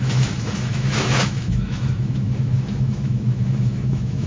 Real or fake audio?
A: fake